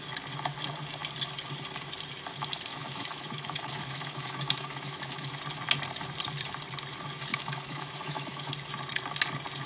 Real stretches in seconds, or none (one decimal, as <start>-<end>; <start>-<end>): 0.0-2.8; 5.3-7.3; 8.5-9.7